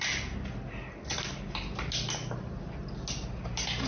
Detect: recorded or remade recorded